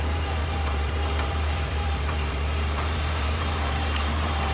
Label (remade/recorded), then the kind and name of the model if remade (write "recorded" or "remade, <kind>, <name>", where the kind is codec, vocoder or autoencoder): remade, vocoder, BigVGAN v2